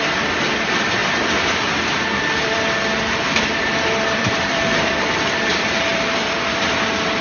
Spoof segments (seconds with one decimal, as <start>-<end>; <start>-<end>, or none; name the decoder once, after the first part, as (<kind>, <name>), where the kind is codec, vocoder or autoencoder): 1.0-5.0 (vocoder, BigVGAN v2); 5.9-6.6